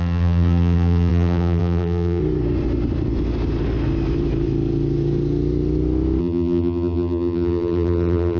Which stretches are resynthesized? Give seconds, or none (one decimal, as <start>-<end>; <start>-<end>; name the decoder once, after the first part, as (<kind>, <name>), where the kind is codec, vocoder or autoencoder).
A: 0.0-2.2 (vocoder, BigVGAN v2); 6.2-8.4